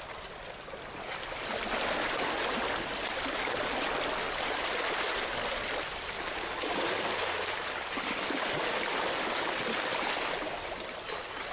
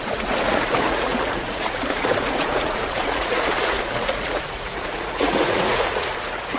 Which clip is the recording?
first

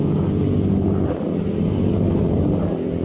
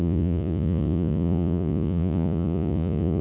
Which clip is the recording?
first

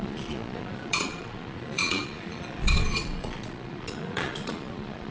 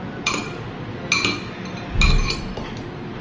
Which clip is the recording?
second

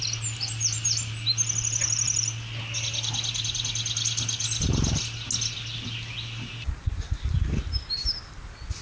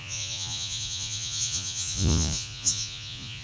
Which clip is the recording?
first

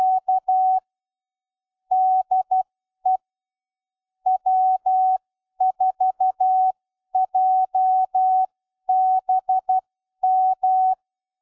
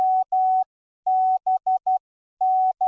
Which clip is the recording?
second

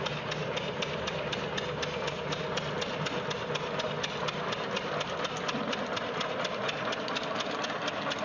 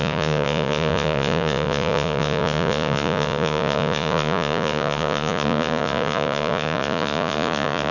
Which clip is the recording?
first